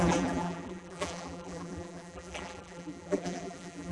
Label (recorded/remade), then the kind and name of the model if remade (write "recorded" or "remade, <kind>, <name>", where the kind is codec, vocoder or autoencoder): remade, vocoder, BigVGAN v2